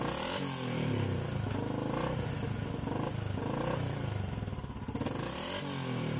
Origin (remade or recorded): recorded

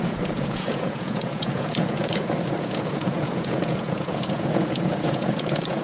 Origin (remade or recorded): remade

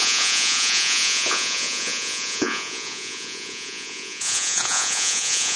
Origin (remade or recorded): remade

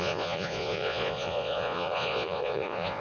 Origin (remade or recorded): remade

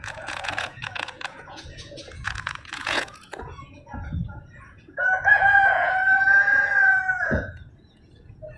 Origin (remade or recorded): remade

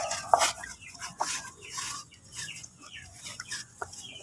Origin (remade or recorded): remade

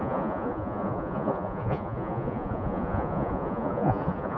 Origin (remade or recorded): remade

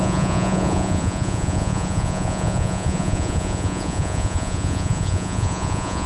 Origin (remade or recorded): remade